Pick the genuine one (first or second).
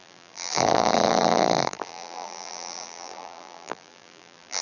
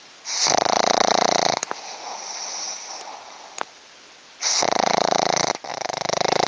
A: second